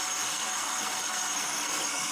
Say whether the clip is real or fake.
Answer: fake